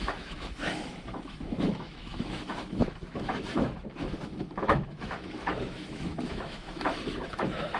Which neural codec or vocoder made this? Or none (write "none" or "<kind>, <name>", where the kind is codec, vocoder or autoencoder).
autoencoder, DAC-VAE